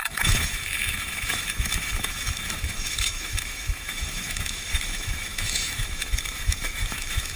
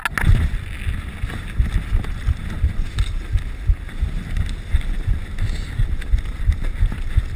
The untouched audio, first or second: second